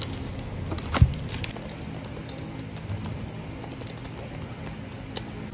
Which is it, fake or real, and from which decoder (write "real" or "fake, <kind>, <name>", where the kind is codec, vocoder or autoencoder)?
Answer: real